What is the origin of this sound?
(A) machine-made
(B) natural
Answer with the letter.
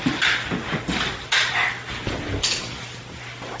B